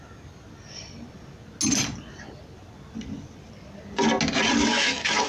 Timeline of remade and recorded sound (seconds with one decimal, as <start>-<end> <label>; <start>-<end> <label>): 0.0-4.6 recorded; 4.6-5.3 remade